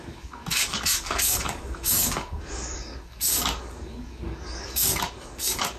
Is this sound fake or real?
fake